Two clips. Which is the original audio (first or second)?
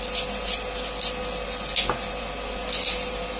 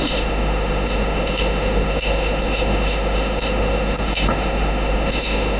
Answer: first